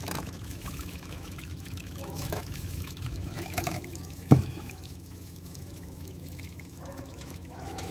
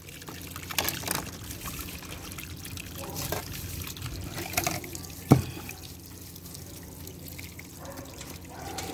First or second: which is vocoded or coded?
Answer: first